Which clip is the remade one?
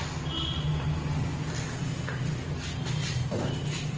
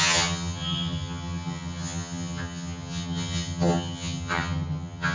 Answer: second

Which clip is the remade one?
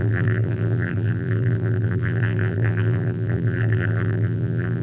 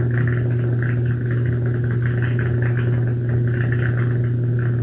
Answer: first